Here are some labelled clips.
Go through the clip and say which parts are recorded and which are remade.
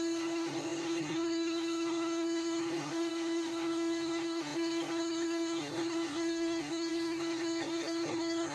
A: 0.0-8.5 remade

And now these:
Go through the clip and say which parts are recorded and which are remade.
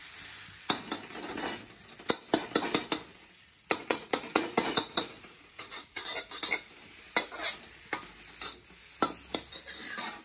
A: 0.0-3.1 recorded; 3.1-6.0 remade; 6.0-10.2 recorded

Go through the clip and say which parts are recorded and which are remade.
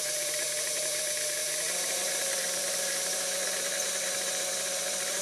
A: 0.0-5.2 remade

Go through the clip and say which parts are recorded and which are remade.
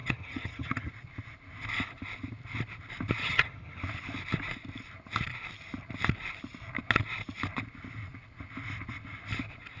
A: 0.0-0.9 remade; 0.9-3.2 recorded; 3.2-3.8 remade; 3.8-9.8 recorded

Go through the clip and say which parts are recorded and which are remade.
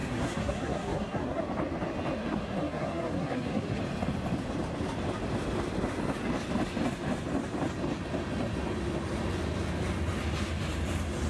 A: 0.0-1.4 remade; 1.4-2.2 recorded; 2.2-3.8 remade; 3.8-11.3 recorded